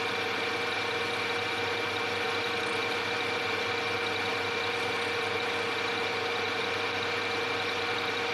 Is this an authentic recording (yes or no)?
yes